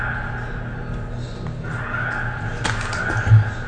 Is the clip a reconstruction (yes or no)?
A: no